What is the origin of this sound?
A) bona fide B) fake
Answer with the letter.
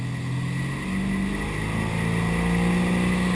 A